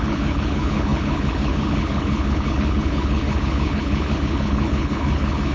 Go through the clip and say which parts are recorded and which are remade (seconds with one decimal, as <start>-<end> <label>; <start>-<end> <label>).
0.0-5.5 remade